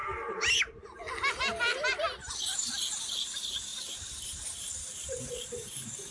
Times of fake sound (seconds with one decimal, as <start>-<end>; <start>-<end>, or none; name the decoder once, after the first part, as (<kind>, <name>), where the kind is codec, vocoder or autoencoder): 0.0-0.6 (vocoder, BigVGAN v2); 3.7-6.1